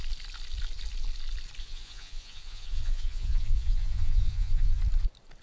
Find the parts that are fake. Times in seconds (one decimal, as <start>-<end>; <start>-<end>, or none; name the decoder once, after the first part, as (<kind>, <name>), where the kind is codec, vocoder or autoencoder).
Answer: 1.6-4.8 (vocoder, Vocos)